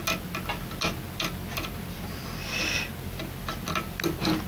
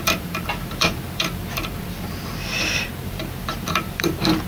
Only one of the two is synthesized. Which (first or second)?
second